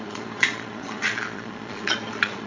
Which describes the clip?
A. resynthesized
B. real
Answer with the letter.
A